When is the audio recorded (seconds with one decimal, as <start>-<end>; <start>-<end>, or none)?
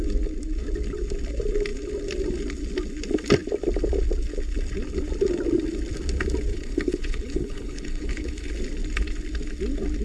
0.0-6.5; 8.5-10.0